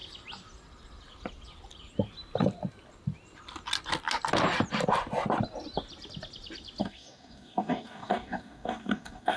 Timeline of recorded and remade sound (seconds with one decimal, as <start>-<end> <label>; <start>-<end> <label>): 0.0-6.8 recorded; 6.8-9.4 remade